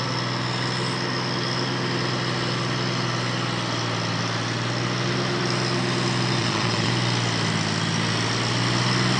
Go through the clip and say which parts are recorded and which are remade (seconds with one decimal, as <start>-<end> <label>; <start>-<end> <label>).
0.0-6.4 recorded; 6.4-6.9 remade; 6.9-9.2 recorded